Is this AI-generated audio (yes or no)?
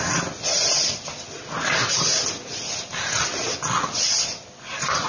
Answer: no